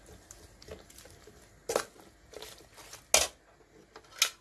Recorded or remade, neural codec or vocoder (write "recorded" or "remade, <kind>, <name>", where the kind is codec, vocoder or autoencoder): recorded